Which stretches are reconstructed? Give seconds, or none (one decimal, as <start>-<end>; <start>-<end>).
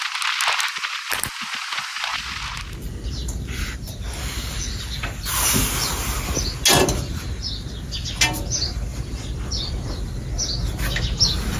8.9-10.0